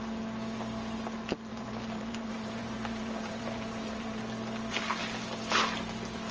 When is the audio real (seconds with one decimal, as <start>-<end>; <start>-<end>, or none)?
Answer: 0.0-1.5; 4.2-6.3